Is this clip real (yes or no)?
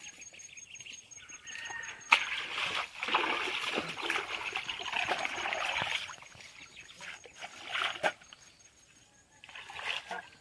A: yes